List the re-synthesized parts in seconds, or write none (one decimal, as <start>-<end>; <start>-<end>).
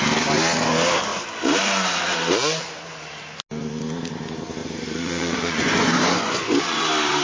4.6-6.8